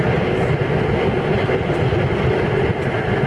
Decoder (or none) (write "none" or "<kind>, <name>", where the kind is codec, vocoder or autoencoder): none